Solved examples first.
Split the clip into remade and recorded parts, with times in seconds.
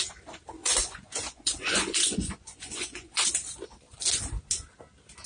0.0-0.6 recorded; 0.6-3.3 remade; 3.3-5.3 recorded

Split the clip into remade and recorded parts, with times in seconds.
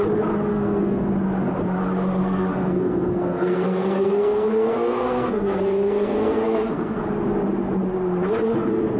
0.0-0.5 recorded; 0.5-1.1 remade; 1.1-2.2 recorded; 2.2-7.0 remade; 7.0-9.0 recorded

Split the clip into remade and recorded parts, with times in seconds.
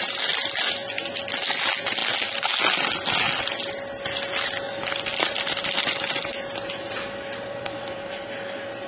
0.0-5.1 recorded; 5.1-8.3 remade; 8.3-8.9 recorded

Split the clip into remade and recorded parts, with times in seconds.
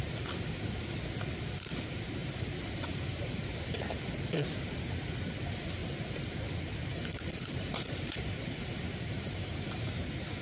0.0-2.2 recorded; 2.2-3.8 remade; 3.8-6.9 recorded; 6.9-9.9 remade; 9.9-10.4 recorded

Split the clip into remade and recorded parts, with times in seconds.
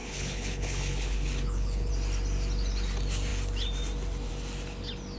0.0-1.9 remade; 1.9-5.2 recorded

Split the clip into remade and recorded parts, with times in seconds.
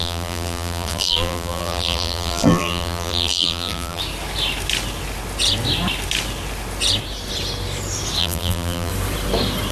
0.0-4.0 remade; 4.0-8.2 recorded; 8.2-8.9 remade; 8.9-9.7 recorded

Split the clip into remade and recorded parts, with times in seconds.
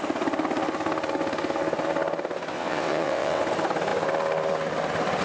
0.0-2.5 recorded; 2.5-3.4 remade; 3.4-5.2 recorded